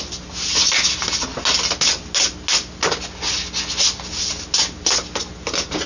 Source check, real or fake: real